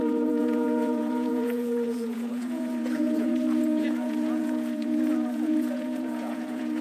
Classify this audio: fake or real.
fake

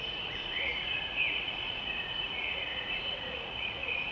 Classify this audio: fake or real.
fake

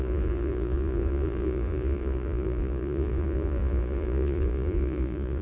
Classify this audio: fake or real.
fake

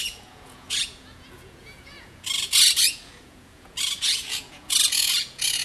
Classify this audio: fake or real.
fake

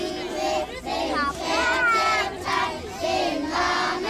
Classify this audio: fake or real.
real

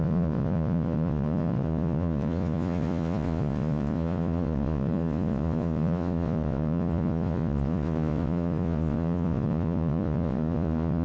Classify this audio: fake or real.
fake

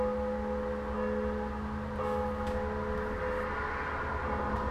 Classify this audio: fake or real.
real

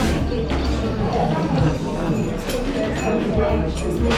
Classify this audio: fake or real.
real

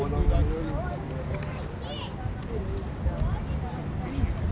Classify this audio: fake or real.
real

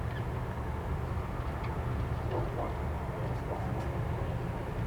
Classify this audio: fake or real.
real